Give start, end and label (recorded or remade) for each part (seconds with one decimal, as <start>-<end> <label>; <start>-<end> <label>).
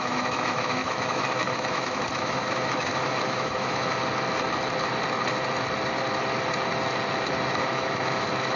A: 0.0-4.0 remade; 4.0-7.5 recorded; 7.5-8.6 remade